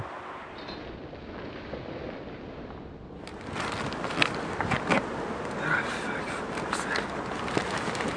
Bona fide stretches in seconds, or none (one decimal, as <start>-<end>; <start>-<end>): 0.0-8.2